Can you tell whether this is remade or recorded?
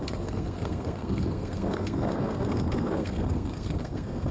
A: remade